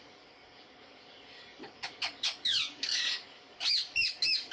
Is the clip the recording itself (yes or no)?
no